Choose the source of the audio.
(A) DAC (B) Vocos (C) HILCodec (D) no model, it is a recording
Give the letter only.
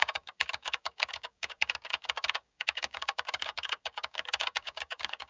A